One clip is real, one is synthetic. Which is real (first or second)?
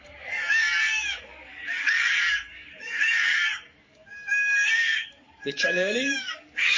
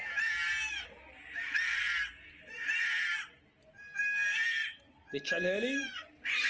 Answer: second